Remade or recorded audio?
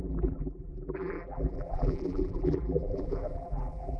remade